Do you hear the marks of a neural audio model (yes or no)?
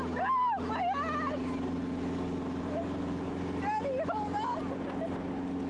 no